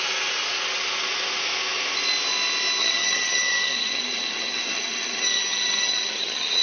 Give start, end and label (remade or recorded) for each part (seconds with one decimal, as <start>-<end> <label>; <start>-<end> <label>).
0.0-2.8 recorded; 2.8-6.6 remade